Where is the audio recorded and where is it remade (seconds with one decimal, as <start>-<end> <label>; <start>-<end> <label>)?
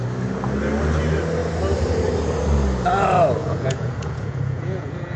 0.0-3.4 recorded; 3.4-5.2 remade